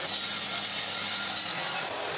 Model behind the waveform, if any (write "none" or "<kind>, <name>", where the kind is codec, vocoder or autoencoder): none